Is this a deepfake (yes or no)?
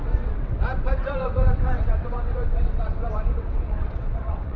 yes